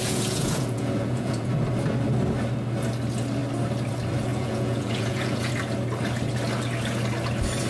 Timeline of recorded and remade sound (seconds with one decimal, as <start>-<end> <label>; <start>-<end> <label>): 0.0-1.5 remade; 1.5-4.3 recorded; 4.3-5.5 remade; 5.5-7.7 recorded